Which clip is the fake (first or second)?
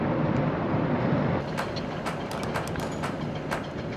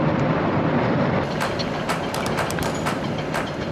second